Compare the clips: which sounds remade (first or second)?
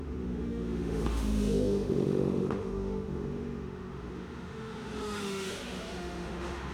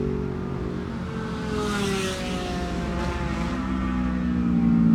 first